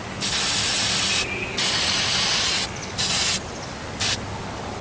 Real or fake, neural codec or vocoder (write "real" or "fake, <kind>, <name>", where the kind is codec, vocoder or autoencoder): real